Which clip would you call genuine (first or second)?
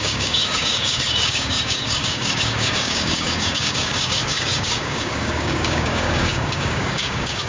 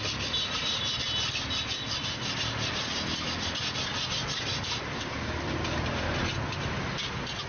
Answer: second